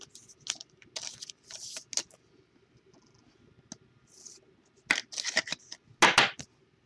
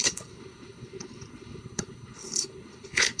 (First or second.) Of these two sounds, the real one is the first